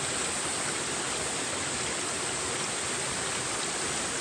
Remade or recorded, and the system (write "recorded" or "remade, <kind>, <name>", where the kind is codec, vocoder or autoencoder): recorded